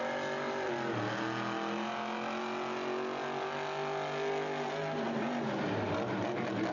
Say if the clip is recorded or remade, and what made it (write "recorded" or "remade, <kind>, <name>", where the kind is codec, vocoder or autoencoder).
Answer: recorded